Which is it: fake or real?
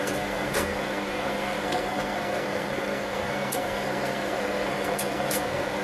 fake